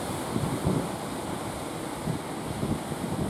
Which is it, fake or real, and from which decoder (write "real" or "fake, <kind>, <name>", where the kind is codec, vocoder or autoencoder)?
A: real